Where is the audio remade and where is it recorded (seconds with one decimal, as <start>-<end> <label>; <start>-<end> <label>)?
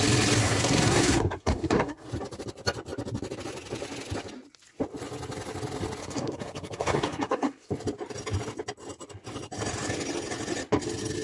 0.0-0.4 recorded; 0.4-2.1 remade; 2.1-6.0 recorded; 6.0-7.7 remade; 7.7-11.2 recorded